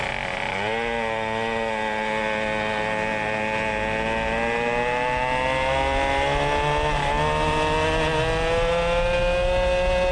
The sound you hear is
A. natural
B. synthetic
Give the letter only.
A